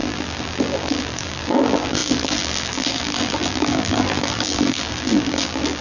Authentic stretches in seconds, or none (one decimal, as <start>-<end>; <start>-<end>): none